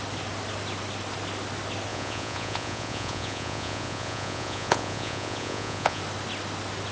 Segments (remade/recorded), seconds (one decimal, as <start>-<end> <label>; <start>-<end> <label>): 0.0-1.9 recorded; 1.9-6.0 remade; 6.0-6.9 recorded